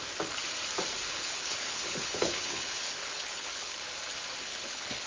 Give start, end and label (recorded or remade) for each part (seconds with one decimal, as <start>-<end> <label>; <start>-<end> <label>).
0.0-1.0 recorded; 1.0-3.8 remade; 3.8-4.5 recorded; 4.5-5.1 remade